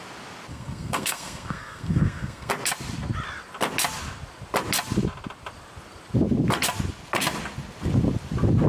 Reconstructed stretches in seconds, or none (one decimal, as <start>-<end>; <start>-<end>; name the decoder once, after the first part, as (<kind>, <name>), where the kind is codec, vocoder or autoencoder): 0.5-2.5 (codec, SNAC)